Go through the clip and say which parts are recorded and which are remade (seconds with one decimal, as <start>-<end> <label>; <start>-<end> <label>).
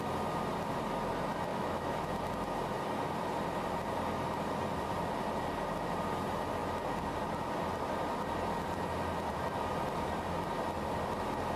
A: 0.0-1.5 recorded; 1.5-2.1 remade; 2.1-11.6 recorded